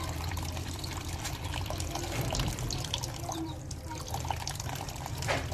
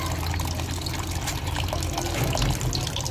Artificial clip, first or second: first